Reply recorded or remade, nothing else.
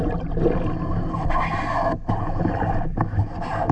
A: recorded